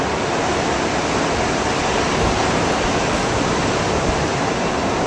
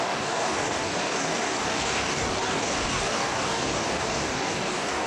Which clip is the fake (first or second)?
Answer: second